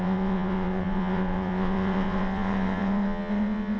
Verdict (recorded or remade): remade